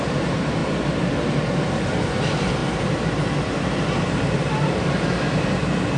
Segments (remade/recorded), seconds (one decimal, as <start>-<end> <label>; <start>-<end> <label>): 0.0-6.0 remade